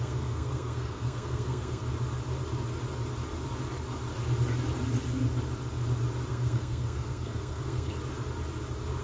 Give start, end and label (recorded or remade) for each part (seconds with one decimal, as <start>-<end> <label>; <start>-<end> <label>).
0.0-1.8 remade; 1.8-6.3 recorded; 6.3-7.9 remade; 7.9-9.0 recorded